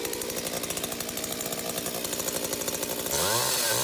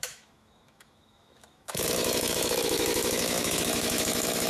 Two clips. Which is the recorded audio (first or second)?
first